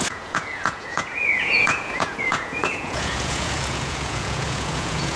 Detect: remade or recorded remade